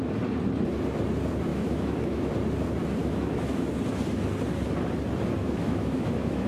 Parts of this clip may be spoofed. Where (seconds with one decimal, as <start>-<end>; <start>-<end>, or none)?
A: 1.5-2.3; 3.0-3.7; 5.4-6.5